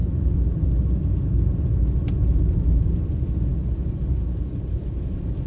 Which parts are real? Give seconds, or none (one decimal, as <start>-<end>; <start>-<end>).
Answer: 0.0-5.5